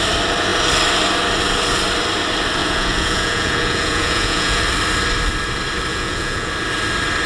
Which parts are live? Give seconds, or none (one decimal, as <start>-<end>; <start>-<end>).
0.0-2.6; 4.6-5.9; 6.5-7.3